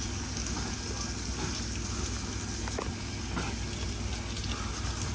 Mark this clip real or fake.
real